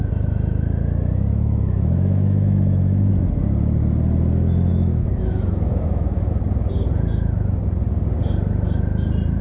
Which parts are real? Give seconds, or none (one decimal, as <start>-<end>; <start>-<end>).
0.0-1.3; 3.1-4.7; 6.3-9.4